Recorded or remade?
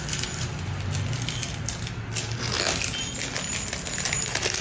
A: recorded